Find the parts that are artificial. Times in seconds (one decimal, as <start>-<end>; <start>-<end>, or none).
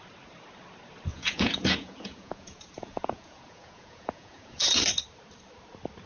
1.1-4.8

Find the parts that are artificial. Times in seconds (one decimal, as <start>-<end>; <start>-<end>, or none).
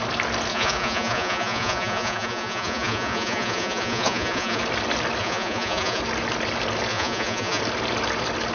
0.5-4.6; 5.2-6.0; 6.9-7.6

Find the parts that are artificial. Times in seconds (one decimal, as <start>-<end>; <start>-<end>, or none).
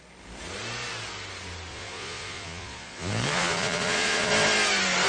1.7-4.3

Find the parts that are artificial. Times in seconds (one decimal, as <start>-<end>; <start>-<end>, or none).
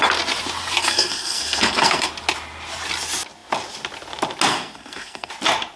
0.8-2.1; 4.5-5.3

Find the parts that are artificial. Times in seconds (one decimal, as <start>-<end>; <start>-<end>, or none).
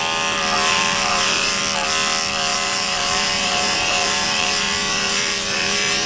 0.7-1.6; 2.5-6.1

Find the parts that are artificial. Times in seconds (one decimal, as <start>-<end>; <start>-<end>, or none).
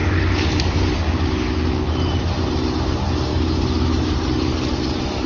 0.0-1.9; 3.3-4.8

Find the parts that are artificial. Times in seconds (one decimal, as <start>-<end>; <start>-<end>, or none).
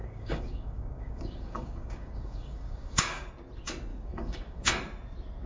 0.0-3.3; 3.9-4.7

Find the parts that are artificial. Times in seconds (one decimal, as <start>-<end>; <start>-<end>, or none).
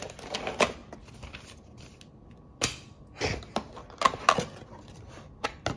none